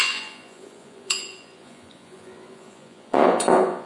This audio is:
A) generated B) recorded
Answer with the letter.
A